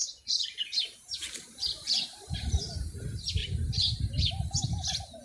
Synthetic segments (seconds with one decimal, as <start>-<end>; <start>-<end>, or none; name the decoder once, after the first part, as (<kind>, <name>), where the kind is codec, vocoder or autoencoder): 0.0-2.9 (vocoder, BigVGAN v2); 3.4-4.3